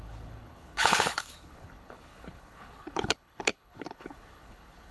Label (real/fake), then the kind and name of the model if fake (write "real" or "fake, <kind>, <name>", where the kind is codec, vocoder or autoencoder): fake, codec, HILCodec